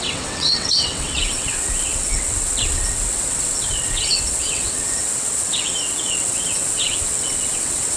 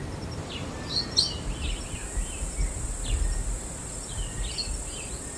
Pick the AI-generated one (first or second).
first